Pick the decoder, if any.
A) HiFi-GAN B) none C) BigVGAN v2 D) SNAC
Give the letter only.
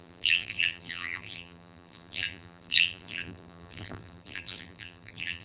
C